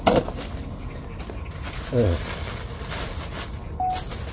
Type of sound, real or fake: real